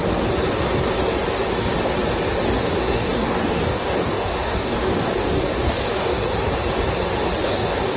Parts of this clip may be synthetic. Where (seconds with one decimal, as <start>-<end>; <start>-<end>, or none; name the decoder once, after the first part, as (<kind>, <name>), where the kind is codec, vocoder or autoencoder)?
2.6-6.3 (codec, DAC); 7.4-8.0